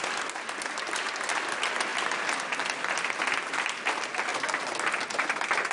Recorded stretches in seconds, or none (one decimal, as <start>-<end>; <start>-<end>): 0.0-5.7